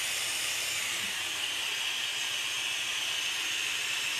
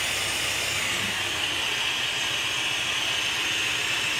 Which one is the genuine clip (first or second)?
second